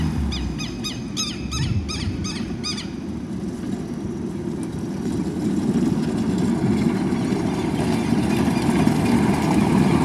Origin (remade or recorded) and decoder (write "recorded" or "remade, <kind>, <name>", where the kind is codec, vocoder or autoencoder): recorded